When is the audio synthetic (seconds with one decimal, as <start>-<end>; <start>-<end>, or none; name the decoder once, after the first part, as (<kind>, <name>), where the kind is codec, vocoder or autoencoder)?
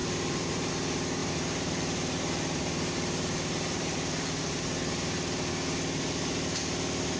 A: 0.0-0.7 (vocoder, BigVGAN v2); 1.2-5.5